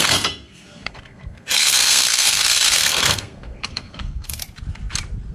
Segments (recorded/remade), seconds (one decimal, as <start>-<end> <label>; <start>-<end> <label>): 0.0-4.4 remade; 4.4-5.3 recorded